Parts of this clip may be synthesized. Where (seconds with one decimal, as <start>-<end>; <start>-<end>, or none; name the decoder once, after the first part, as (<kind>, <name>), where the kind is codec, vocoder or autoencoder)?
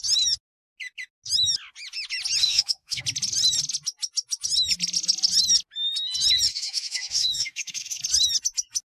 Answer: 2.4-3.0 (autoencoder, DAC-VAE); 6.5-8.0